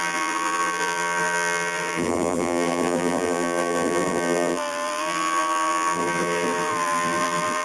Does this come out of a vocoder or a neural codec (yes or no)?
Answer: yes